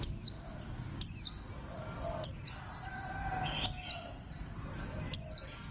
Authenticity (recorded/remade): recorded